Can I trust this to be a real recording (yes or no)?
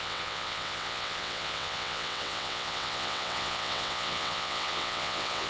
no